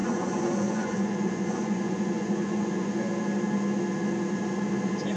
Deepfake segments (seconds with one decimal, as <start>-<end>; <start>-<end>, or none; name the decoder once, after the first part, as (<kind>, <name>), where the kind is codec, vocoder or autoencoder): 0.0-3.1 (vocoder, Vocos)